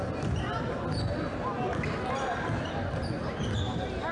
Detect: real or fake real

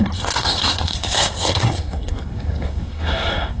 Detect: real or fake fake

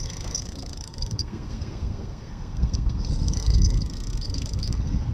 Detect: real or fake fake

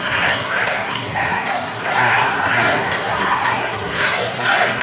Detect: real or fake fake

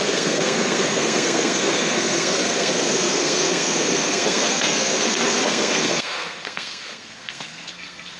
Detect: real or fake fake